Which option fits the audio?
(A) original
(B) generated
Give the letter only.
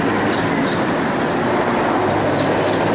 A